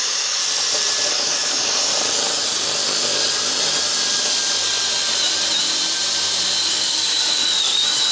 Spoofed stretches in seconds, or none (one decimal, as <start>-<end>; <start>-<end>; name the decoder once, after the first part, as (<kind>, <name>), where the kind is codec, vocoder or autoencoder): 0.0-0.4 (codec, DAC); 1.1-1.9; 6.6-8.1